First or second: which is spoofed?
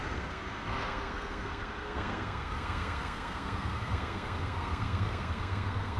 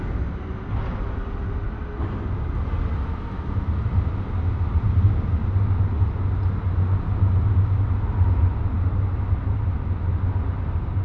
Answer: first